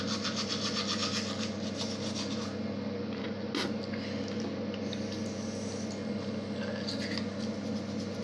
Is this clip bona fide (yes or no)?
yes